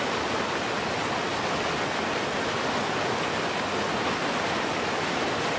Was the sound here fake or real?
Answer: real